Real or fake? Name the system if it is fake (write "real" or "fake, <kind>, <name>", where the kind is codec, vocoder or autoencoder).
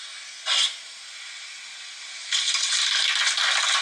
real